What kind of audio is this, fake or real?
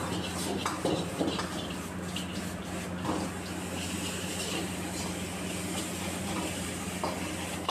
real